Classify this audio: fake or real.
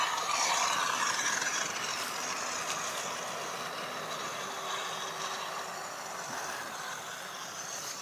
real